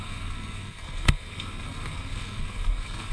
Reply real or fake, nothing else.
fake